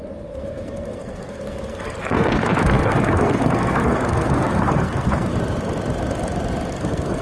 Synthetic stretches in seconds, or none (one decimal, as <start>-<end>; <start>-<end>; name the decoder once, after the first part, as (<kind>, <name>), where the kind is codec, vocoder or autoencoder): 0.0-5.3 (codec, SNAC); 6.7-7.2